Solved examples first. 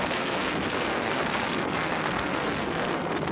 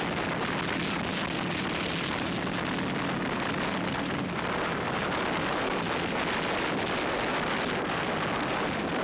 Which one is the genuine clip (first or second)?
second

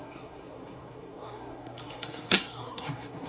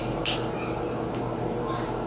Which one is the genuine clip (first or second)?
second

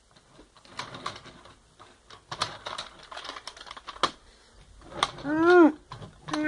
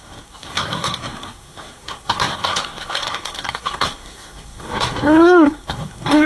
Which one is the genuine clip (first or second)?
first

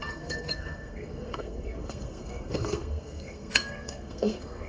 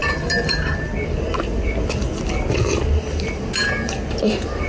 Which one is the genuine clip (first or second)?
second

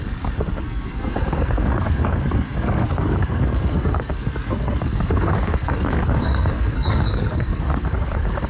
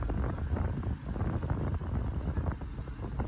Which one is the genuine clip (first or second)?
second